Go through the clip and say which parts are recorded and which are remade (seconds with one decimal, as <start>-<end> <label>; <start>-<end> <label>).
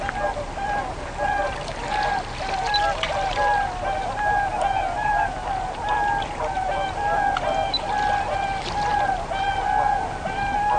0.0-0.8 remade; 0.8-2.8 recorded; 2.8-10.8 remade